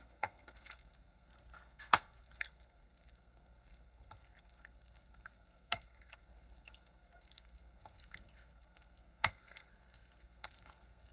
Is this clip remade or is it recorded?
remade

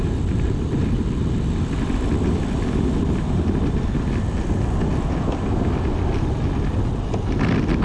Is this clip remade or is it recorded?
recorded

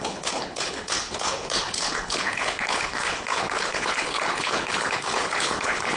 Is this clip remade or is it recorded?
remade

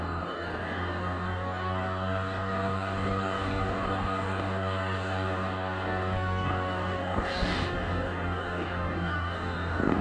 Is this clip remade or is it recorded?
remade